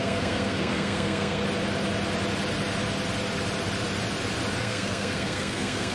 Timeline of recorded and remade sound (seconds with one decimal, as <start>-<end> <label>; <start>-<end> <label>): 0.0-1.4 remade; 1.4-4.6 recorded; 4.6-5.9 remade